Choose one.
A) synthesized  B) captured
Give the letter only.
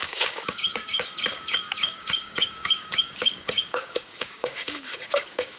A